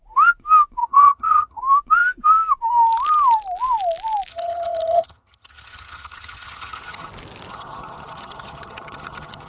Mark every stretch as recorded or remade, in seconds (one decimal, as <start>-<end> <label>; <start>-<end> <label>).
0.0-0.8 recorded; 0.8-1.6 remade; 1.6-4.3 recorded; 4.3-7.1 remade; 7.1-7.5 recorded; 7.5-9.5 remade